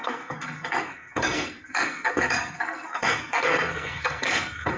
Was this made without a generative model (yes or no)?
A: no